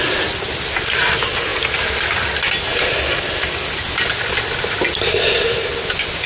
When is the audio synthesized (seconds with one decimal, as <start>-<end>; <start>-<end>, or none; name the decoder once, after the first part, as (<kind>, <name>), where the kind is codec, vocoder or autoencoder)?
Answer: none